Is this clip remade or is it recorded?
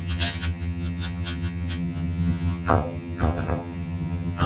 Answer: remade